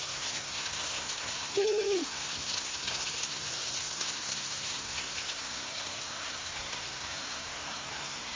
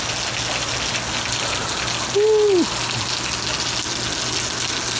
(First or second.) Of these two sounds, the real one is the second